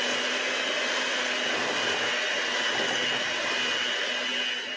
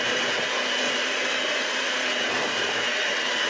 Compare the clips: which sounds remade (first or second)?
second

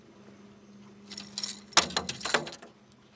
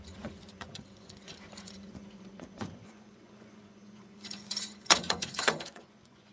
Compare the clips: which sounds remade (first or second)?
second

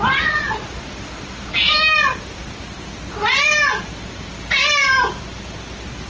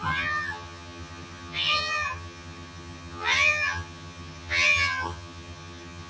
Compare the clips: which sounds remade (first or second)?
second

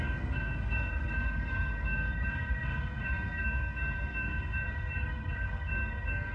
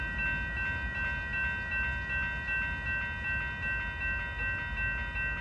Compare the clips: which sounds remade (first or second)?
first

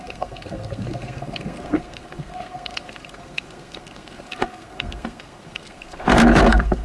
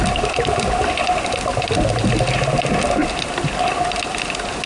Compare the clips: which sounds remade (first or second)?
first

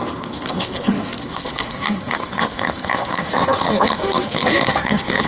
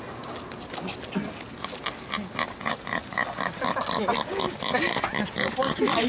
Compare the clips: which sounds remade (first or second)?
first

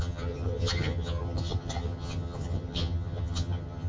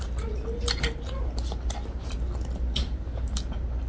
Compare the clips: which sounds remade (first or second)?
first